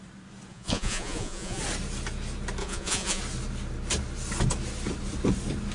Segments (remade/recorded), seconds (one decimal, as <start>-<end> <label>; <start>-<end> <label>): 0.0-0.5 recorded; 0.5-1.6 remade; 1.6-2.6 recorded; 2.6-3.2 remade; 3.2-5.7 recorded